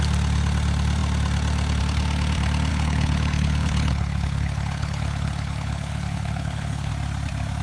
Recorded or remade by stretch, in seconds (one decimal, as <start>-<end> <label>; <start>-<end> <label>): 0.0-2.7 recorded; 2.7-6.9 remade; 6.9-7.6 recorded